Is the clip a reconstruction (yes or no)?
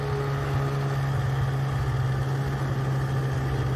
no